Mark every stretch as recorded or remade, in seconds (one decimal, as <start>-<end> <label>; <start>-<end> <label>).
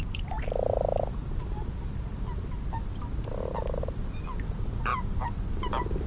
0.0-6.1 recorded